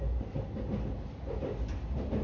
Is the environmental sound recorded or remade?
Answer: recorded